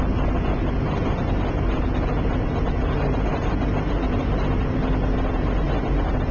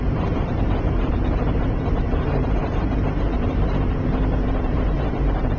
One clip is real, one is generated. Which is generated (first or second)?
second